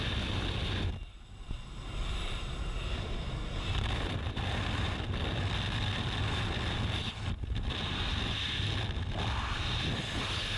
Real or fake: real